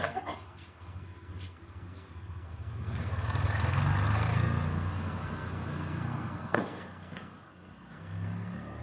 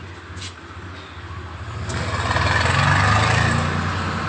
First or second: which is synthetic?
first